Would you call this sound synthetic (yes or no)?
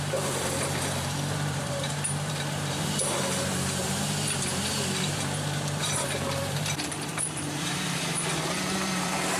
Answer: yes